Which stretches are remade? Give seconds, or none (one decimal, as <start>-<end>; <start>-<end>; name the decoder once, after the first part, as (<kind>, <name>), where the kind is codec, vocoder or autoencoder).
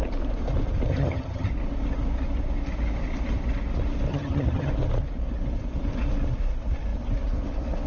0.9-1.5 (vocoder, HiFi-GAN); 4.1-4.7